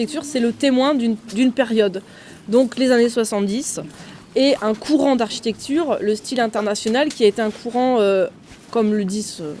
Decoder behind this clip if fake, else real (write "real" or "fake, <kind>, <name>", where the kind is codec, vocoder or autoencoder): real